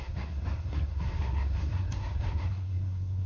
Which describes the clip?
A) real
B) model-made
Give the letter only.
B